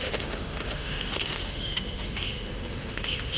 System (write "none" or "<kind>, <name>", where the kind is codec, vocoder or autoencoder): autoencoder, DAC-VAE